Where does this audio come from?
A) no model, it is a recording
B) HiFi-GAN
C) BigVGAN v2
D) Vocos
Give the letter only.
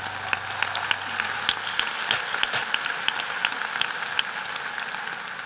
A